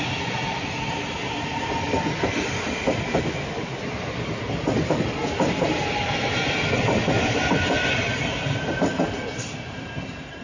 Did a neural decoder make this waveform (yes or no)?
no